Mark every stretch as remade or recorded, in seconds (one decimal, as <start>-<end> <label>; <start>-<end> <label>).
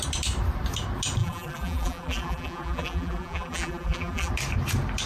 0.0-1.2 recorded; 1.2-4.3 remade; 4.3-5.1 recorded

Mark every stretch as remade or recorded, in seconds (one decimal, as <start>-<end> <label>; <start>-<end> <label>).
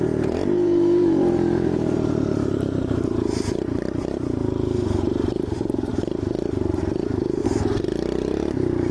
0.0-5.9 remade; 5.9-6.7 recorded; 6.7-7.4 remade; 7.4-8.3 recorded; 8.3-8.9 remade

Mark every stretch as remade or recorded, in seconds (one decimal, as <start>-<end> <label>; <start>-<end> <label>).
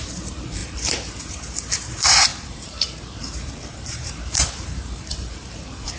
0.0-6.0 remade